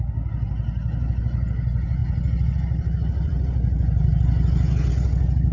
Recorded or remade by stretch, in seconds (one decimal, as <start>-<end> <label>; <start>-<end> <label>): 0.0-5.5 recorded